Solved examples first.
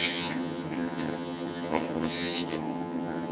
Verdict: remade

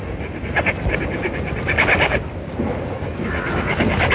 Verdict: recorded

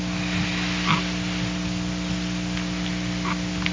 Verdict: recorded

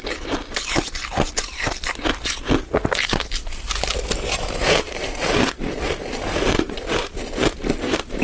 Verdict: recorded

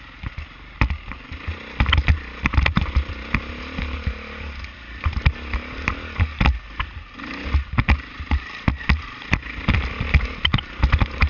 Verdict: recorded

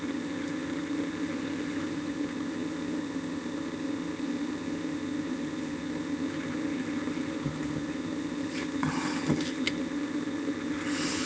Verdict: remade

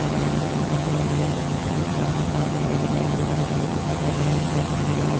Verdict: remade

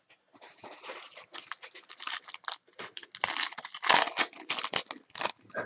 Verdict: recorded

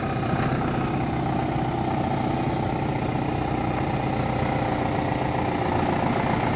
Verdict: recorded